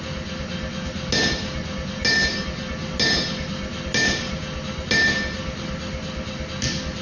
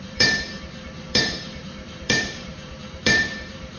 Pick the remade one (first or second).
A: second